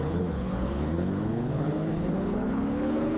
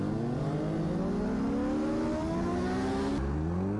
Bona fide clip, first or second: second